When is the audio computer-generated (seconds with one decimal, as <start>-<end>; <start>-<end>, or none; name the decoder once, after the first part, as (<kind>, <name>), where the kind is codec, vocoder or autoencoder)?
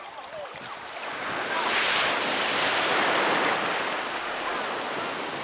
none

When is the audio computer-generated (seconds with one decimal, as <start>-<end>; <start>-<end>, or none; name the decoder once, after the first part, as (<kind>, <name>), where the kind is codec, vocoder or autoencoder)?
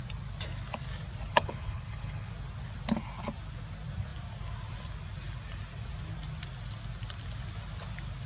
1.3-2.3 (codec, HILCodec)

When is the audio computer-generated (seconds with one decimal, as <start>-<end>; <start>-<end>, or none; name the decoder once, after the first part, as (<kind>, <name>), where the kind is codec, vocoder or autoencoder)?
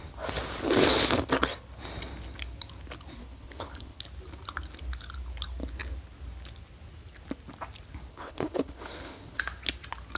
3.2-4.0 (codec, HILCodec); 8.1-9.4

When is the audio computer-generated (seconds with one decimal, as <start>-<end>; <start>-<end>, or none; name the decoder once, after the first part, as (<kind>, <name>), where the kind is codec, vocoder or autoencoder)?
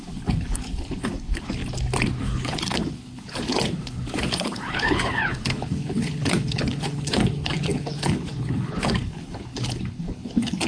0.0-1.6 (codec, HILCodec); 2.2-10.7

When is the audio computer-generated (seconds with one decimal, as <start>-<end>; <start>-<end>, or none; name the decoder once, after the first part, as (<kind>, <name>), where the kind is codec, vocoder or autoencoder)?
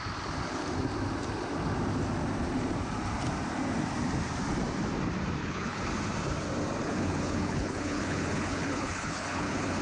5.4-5.9 (codec, HILCodec); 6.8-9.8